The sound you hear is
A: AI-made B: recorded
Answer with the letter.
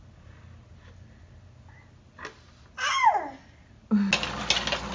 B